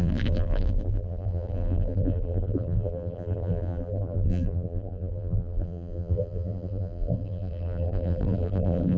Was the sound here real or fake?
fake